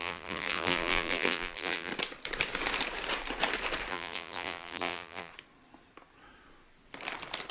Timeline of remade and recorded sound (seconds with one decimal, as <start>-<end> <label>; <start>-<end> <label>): 0.0-1.9 remade; 1.9-3.9 recorded; 3.9-5.3 remade; 5.3-7.5 recorded